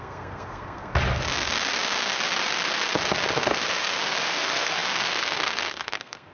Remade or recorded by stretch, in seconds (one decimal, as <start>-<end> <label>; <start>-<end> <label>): 0.0-0.9 remade; 0.9-3.3 recorded; 3.3-6.3 remade